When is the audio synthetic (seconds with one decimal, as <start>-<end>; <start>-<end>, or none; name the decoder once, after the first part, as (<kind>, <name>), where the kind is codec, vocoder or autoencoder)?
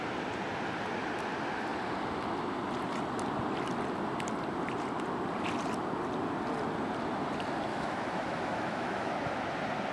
7.7-9.1 (autoencoder, DAC-VAE)